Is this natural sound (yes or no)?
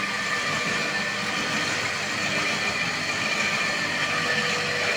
yes